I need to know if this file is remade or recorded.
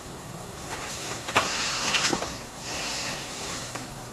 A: remade